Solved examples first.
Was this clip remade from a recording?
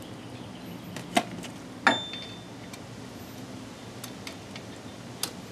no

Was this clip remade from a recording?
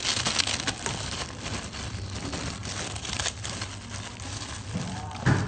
no